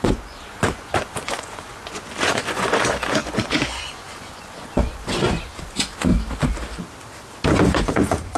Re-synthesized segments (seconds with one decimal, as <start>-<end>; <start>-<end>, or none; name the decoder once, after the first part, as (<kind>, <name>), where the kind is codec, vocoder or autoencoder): 0.0-6.1 (vocoder, Vocos); 7.5-8.4